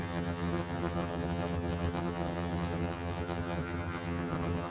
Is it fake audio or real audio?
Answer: fake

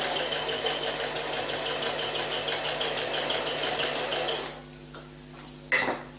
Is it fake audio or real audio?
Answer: real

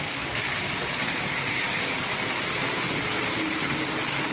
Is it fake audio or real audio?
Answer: real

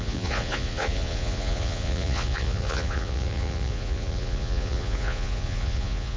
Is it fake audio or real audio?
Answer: fake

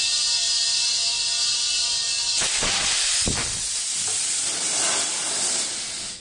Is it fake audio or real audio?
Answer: real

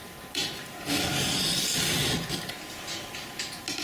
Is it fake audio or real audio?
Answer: real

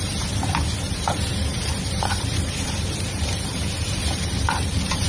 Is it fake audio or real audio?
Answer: fake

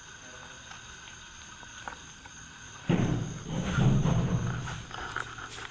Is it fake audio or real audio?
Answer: real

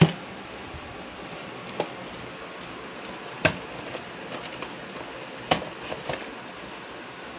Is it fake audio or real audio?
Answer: real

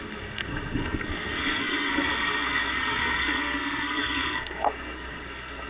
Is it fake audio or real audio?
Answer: fake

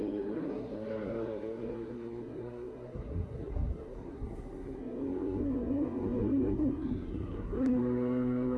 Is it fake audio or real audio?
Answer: fake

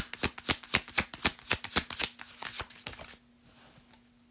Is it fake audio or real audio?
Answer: real